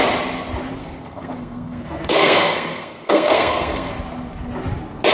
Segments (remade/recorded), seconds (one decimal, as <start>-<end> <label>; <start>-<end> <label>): 0.0-0.8 recorded; 0.8-3.9 remade; 3.9-5.1 recorded